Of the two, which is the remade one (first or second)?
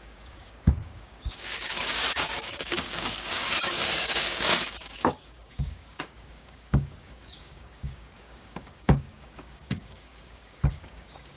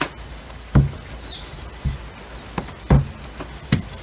first